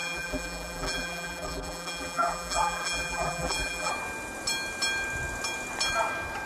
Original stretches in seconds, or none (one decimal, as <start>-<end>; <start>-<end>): 3.9-6.5